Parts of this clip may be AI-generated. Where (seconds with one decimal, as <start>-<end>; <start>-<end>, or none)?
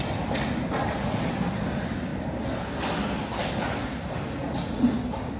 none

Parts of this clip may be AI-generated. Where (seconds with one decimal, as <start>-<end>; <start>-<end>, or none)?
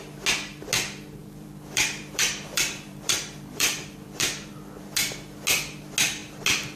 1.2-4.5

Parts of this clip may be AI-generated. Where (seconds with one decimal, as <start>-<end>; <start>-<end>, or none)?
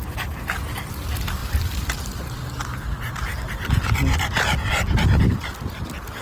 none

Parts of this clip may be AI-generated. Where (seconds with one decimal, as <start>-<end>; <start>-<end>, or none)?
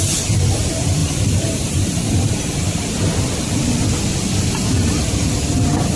1.0-3.8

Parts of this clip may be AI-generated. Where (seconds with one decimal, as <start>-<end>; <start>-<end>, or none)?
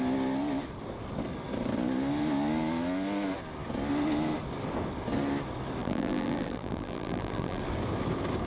5.8-7.6